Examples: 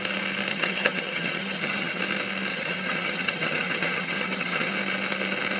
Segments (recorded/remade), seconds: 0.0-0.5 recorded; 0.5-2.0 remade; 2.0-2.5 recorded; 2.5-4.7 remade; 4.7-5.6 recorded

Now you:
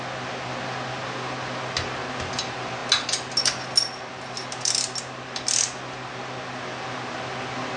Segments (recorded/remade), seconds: 0.0-7.8 recorded

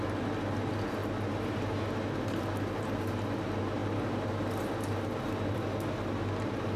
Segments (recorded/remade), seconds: 0.0-6.8 recorded

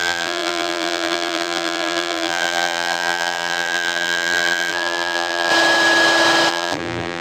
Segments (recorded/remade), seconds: 0.0-5.5 remade; 5.5-6.5 recorded; 6.5-7.2 remade

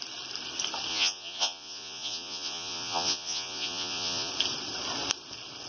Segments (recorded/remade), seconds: 0.0-0.9 recorded; 0.9-4.3 remade; 4.3-5.7 recorded

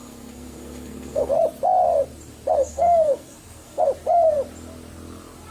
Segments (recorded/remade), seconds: 0.0-1.3 remade; 1.3-2.6 recorded; 2.6-3.8 remade; 3.8-5.5 recorded

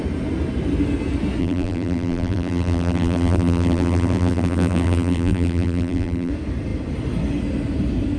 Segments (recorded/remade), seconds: 0.0-1.4 recorded; 1.4-6.3 remade; 6.3-8.2 recorded